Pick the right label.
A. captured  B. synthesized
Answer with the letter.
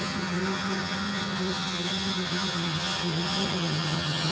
B